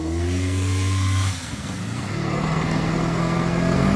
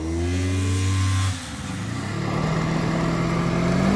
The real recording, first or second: second